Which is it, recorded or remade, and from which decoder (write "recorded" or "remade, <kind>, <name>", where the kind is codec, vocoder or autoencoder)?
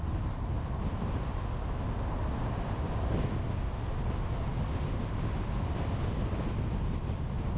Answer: recorded